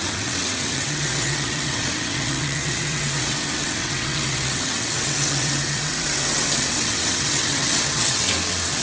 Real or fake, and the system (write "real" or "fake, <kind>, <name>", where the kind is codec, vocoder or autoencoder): fake, vocoder, WaveNeXt